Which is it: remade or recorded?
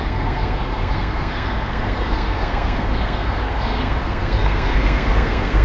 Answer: remade